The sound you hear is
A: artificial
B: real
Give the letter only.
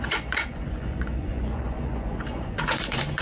A